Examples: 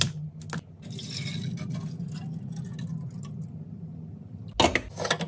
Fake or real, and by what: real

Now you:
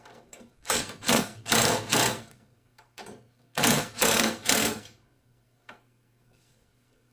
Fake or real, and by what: fake, codec, SNAC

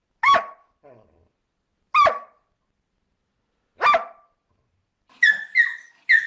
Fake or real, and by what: real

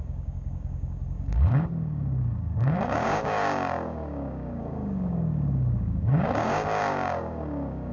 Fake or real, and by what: fake, codec, DAC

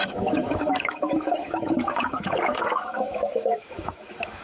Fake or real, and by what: fake, autoencoder, DAC-VAE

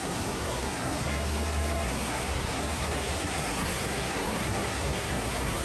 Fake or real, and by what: fake, codec, SNAC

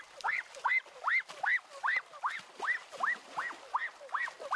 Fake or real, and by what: real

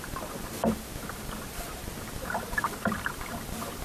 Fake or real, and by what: real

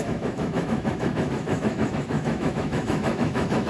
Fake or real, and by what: fake, autoencoder, DAC-VAE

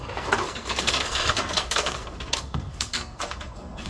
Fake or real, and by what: fake, codec, SNAC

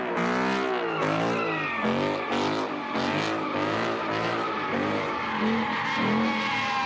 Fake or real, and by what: real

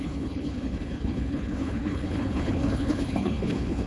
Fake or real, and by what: fake, codec, HILCodec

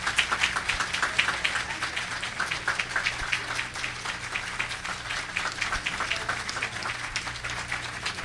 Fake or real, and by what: real